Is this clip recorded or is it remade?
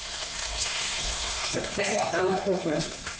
remade